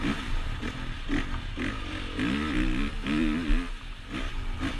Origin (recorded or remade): recorded